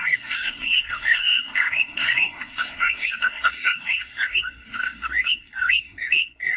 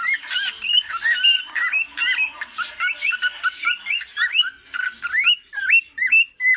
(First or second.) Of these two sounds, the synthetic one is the first